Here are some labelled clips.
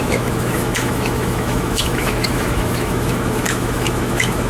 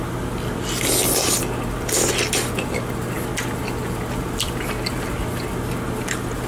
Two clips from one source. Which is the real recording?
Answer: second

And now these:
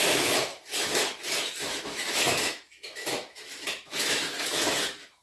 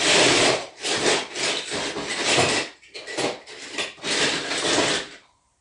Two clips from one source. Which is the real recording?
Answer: second